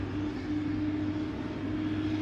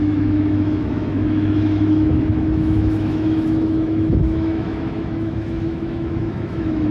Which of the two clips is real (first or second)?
first